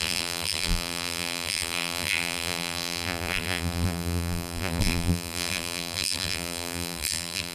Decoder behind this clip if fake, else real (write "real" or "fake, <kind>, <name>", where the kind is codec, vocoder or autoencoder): fake, vocoder, BigVGAN v2